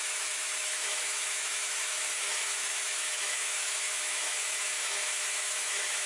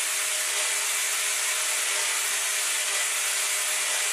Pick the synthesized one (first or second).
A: first